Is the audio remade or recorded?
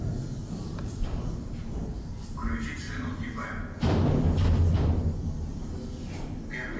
recorded